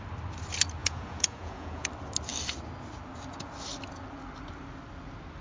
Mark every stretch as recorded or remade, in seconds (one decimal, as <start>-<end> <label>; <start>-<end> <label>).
0.0-0.8 recorded; 0.8-1.9 remade; 1.9-5.4 recorded